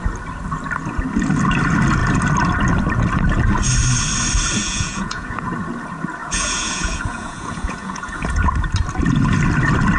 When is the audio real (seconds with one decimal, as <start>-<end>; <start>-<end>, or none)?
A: 0.0-4.6; 5.5-6.2; 8.5-10.0